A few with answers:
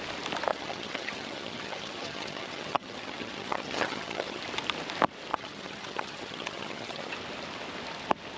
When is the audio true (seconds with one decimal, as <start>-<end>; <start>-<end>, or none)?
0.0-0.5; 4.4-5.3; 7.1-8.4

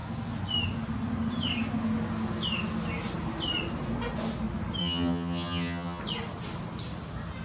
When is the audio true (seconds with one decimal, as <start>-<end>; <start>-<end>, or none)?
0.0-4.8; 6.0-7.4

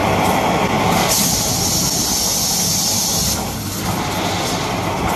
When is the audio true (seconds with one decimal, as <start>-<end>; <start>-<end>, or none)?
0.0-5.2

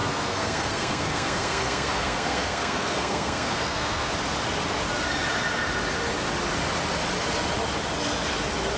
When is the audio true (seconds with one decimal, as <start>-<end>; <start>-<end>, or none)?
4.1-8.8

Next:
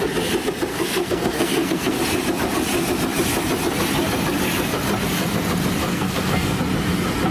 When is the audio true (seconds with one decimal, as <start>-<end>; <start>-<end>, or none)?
0.0-0.7; 2.0-5.9; 6.6-7.3

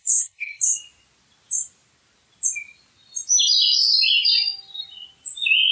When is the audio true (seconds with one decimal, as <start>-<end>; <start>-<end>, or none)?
0.6-5.7

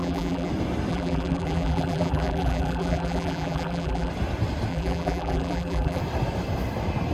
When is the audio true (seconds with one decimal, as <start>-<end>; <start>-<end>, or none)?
0.5-0.9; 4.1-4.7; 6.0-7.1